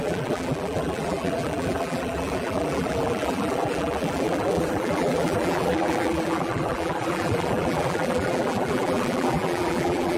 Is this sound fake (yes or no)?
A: yes